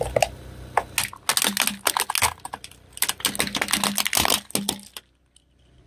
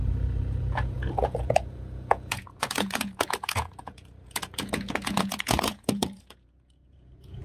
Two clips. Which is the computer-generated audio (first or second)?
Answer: second